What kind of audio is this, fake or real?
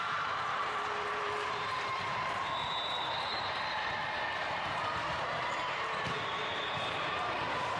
fake